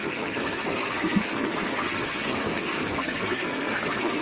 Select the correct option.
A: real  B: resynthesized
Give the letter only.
B